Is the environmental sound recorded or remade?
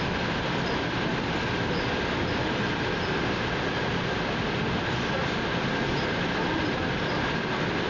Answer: recorded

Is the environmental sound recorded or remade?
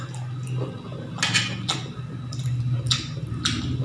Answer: recorded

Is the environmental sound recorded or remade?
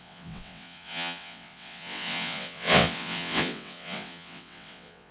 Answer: remade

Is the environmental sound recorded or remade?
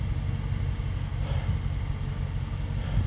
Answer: recorded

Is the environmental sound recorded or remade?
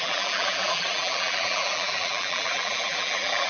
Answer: remade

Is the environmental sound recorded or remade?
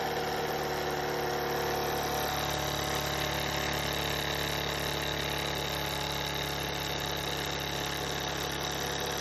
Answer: recorded